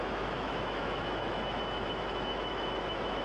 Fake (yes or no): yes